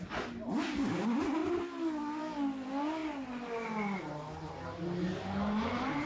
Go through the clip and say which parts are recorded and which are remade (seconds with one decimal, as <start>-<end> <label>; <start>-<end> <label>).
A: 0.0-6.1 recorded